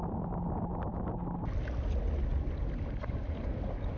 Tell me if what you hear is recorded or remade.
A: recorded